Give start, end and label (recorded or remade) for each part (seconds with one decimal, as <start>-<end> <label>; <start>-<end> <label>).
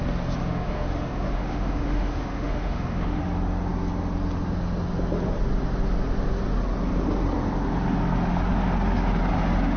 0.0-0.4 recorded; 0.4-3.2 remade; 3.2-9.8 recorded